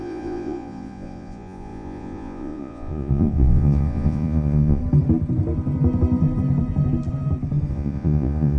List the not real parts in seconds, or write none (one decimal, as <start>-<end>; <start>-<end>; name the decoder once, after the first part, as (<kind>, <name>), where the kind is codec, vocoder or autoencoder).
0.0-4.8 (vocoder, Vocos); 7.7-8.6